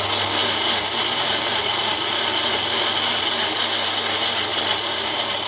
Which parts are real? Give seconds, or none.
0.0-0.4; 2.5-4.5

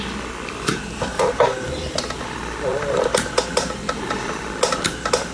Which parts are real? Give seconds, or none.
none

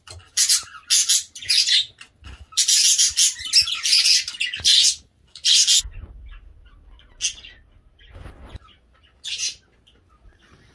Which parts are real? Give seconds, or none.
0.0-10.7

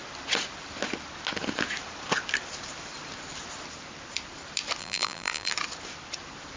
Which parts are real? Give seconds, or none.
0.0-4.8; 5.5-6.6